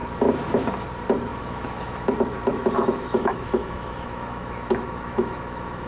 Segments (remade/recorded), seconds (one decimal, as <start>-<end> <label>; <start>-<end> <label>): 0.0-1.3 recorded; 1.3-2.1 remade; 2.1-2.5 recorded; 2.5-5.9 remade